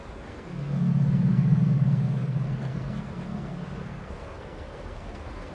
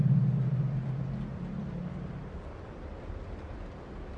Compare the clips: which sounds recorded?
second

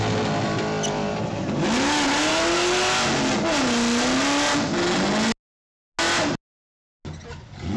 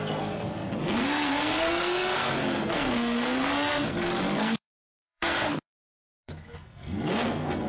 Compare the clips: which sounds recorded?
first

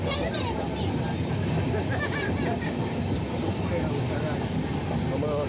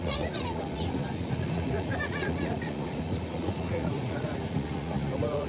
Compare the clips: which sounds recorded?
first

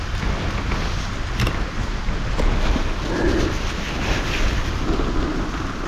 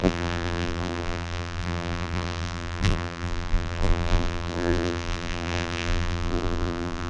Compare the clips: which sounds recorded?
first